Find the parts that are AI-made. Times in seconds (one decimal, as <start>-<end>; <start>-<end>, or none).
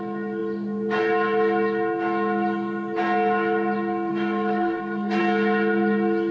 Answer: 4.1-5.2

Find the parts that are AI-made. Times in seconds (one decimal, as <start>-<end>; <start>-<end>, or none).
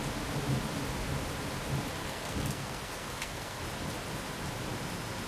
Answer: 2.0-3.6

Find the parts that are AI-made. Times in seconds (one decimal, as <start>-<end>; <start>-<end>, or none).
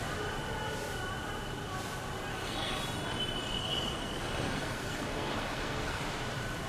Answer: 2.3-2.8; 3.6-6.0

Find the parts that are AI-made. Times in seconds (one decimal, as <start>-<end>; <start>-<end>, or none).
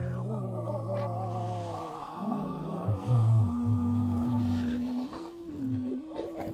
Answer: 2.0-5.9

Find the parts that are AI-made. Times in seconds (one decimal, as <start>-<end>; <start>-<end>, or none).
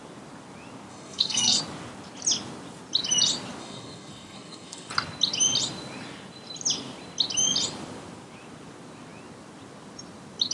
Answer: 0.9-1.6; 3.6-4.9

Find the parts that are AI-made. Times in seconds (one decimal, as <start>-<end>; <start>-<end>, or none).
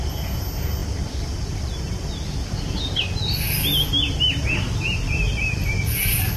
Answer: none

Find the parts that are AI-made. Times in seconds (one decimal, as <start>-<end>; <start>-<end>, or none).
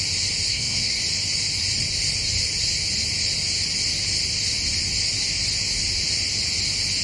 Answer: 0.5-1.0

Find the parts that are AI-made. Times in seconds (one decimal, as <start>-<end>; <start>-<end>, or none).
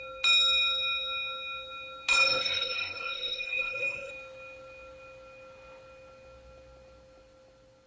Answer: 2.1-4.1